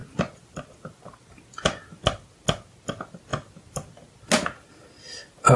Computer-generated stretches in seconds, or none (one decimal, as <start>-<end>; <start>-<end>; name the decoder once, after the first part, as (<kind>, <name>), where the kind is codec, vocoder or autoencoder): none